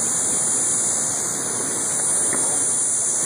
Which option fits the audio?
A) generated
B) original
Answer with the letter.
B